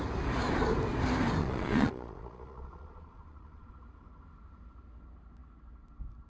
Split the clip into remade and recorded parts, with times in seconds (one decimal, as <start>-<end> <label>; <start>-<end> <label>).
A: 0.0-1.4 recorded; 1.4-3.7 remade; 3.7-6.3 recorded